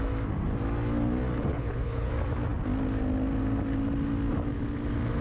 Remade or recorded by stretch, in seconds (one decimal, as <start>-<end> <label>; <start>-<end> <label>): 0.0-1.5 recorded; 1.5-2.1 remade; 2.1-5.2 recorded